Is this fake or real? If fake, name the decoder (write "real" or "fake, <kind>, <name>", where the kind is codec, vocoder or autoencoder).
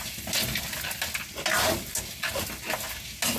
real